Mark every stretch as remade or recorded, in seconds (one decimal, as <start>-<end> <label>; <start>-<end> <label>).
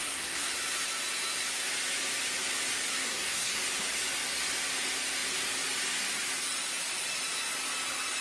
0.0-0.5 remade; 0.5-2.9 recorded; 2.9-3.6 remade; 3.6-8.2 recorded